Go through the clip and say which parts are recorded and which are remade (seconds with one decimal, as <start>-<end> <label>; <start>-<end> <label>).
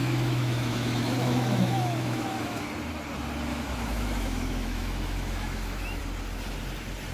0.0-2.7 remade; 2.7-3.5 recorded; 3.5-6.0 remade; 6.0-7.1 recorded